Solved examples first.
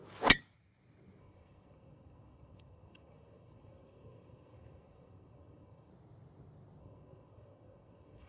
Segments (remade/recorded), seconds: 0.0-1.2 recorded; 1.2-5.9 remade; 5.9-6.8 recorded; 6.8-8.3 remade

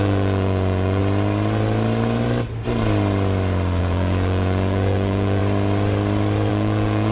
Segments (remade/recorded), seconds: 0.0-1.0 remade; 1.0-3.8 recorded; 3.8-5.4 remade; 5.4-6.5 recorded; 6.5-7.1 remade

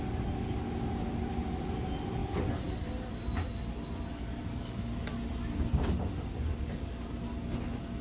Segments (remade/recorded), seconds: 0.0-4.4 recorded; 4.4-4.9 remade; 4.9-8.0 recorded

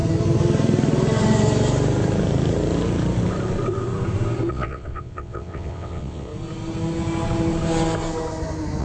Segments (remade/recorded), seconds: 0.0-4.5 recorded; 4.5-6.3 remade; 6.3-8.8 recorded

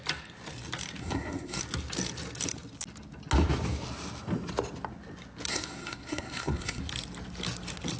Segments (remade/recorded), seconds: 0.0-1.0 recorded; 1.0-1.6 remade; 1.6-5.5 recorded; 5.5-6.8 remade; 6.8-8.0 recorded

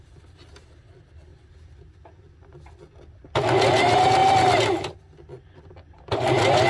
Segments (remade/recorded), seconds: 0.0-6.7 recorded